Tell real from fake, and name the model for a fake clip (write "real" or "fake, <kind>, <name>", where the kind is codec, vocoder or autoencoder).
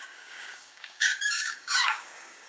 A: fake, codec, DAC